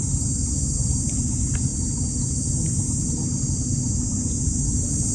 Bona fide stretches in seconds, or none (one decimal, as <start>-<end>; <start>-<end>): 0.4-1.0; 1.7-3.2; 3.7-4.4